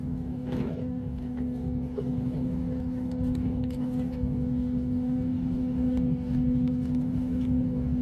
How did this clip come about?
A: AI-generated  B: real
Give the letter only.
A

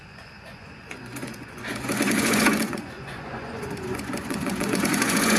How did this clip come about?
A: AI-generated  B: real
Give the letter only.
A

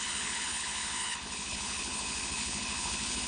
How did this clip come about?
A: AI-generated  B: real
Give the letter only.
A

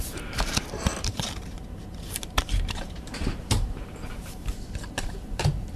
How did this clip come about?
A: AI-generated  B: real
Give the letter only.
A